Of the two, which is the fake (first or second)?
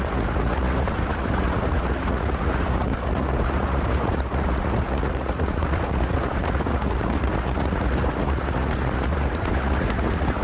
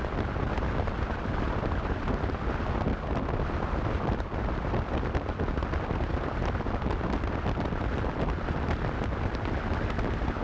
first